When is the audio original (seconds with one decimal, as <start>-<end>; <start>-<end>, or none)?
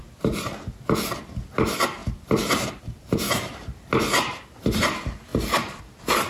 0.0-2.0; 4.6-6.3